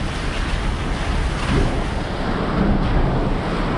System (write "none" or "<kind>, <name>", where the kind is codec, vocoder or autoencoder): none